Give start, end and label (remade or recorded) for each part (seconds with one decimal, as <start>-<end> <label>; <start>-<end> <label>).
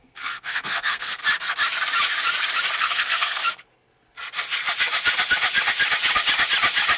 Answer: 0.0-1.2 remade; 1.2-2.8 recorded; 2.8-3.4 remade; 3.4-7.0 recorded